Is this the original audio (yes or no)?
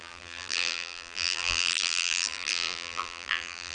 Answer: no